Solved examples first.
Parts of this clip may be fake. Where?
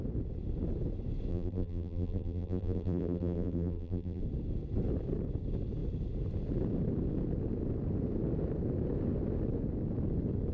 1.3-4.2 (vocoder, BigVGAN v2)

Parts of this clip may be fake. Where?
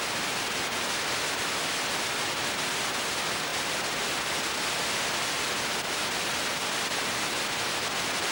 none